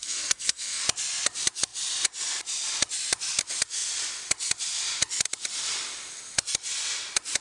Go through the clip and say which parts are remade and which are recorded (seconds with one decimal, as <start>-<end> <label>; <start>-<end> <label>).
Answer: 0.0-0.8 remade; 0.8-7.4 recorded